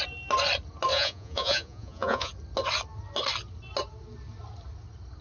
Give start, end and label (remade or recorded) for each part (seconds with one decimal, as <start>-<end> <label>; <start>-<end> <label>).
0.0-0.9 recorded; 0.9-2.3 remade; 2.3-5.2 recorded